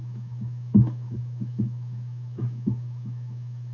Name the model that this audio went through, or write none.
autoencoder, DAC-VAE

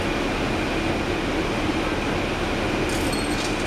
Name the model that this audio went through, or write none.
none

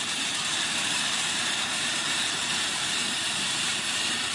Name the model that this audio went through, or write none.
vocoder, BigVGAN v2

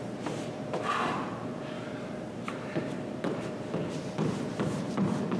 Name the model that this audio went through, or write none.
vocoder, BigVGAN v2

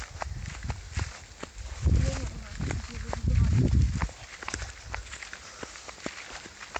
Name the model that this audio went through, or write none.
none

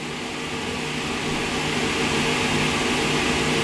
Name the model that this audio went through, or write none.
none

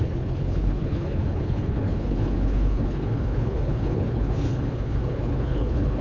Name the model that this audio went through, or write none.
codec, HILCodec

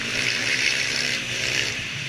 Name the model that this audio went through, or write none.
vocoder, BigVGAN v2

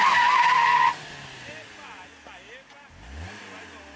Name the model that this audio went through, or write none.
none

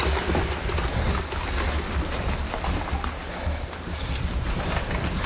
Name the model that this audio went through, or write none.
none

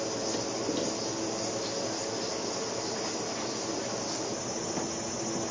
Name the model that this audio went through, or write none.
none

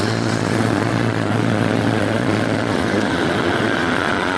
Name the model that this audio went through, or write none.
vocoder, Vocos